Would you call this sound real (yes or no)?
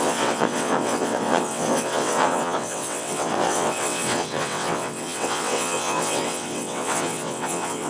no